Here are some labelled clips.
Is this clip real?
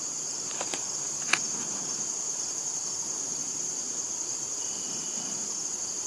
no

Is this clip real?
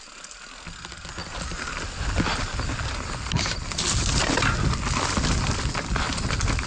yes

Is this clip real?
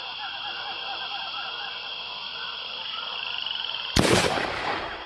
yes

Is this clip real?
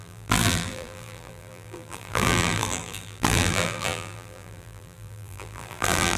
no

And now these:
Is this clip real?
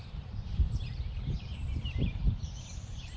no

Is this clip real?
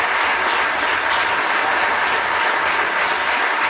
yes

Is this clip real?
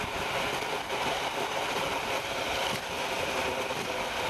no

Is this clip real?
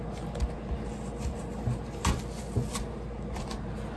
yes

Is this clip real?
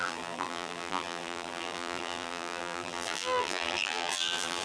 no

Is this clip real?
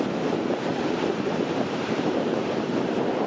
no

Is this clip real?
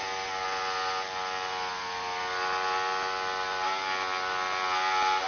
yes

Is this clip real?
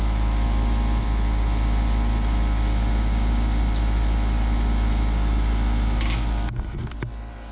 yes